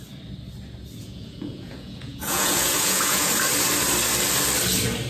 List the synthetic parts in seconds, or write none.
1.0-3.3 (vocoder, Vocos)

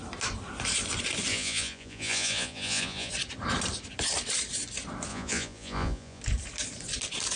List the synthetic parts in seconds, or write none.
1.3-3.1 (vocoder, Vocos); 5.1-6.2

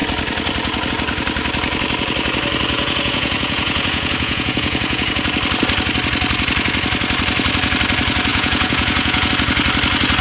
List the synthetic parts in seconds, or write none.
2.7-5.1 (vocoder, Vocos); 8.3-9.3

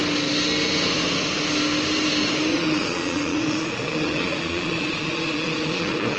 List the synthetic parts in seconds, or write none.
2.5-6.2 (vocoder, Vocos)